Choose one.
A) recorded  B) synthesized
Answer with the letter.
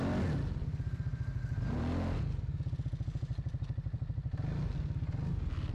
A